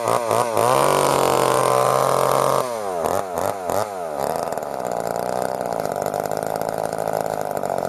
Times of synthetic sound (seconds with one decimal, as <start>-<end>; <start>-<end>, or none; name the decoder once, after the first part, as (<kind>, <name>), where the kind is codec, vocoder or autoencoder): none